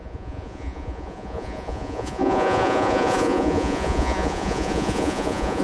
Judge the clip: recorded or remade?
remade